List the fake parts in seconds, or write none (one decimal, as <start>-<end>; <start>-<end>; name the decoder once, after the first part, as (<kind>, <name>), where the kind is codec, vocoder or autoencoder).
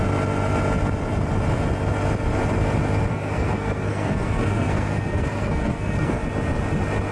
3.1-6.2 (codec, SNAC)